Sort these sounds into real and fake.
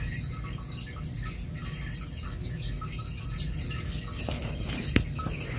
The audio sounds real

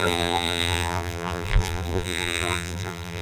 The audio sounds fake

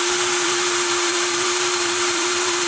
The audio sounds fake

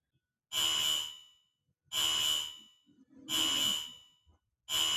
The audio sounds real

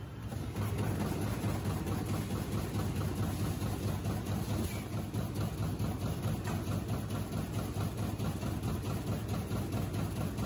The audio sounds real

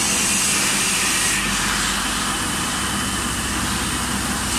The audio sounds real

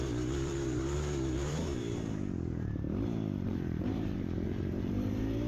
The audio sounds fake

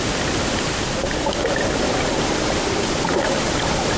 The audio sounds fake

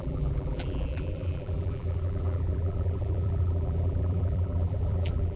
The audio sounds fake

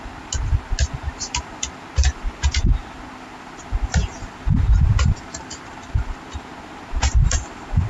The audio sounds real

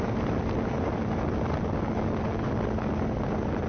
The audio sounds real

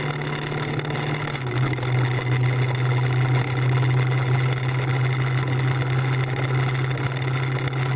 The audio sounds real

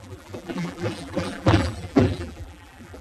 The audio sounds fake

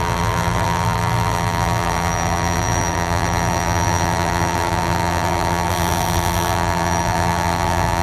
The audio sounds fake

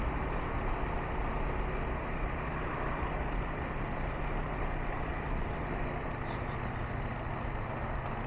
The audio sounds real